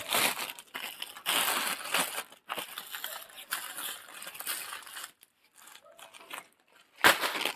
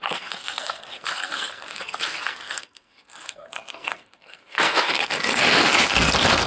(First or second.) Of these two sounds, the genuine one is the first